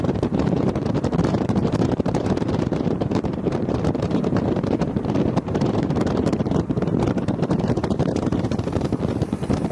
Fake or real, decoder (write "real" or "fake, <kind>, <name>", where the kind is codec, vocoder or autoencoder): fake, vocoder, BigVGAN v2